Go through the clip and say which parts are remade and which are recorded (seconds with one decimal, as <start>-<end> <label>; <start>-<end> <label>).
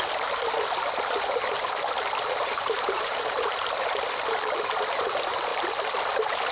0.0-2.5 recorded; 2.5-3.4 remade; 3.4-6.5 recorded